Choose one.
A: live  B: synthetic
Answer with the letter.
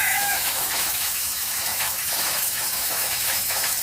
B